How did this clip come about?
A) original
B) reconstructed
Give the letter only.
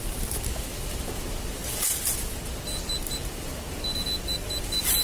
A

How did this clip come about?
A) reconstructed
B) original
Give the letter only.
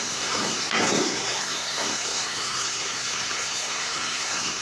A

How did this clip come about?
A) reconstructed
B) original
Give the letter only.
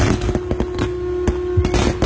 B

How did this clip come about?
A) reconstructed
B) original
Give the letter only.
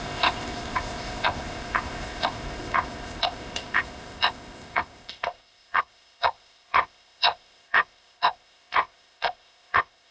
A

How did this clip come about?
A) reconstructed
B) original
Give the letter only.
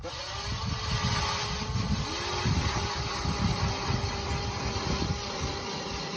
B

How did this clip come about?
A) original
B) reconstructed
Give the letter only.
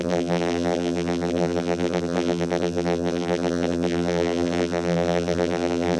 B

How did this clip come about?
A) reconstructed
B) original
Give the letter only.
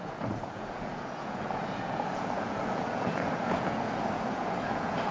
A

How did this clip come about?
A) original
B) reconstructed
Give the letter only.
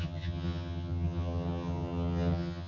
B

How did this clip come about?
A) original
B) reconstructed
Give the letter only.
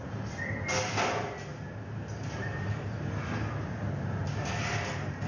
A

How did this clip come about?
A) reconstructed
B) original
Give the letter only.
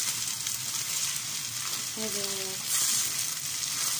B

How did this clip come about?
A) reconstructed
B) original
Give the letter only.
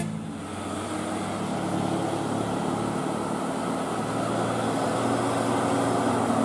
B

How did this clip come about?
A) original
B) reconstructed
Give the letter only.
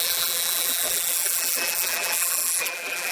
B